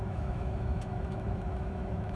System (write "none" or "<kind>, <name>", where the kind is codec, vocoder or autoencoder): autoencoder, DAC-VAE